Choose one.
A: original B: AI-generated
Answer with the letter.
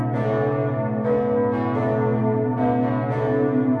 A